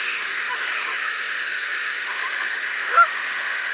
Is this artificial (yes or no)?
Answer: yes